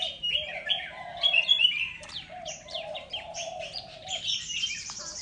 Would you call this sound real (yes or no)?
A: no